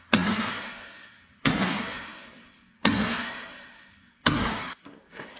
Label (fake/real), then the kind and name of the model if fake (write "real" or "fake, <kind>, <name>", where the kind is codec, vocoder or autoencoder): fake, codec, SNAC